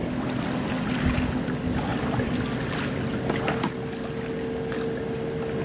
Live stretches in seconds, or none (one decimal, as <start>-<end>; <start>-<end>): 0.0-5.6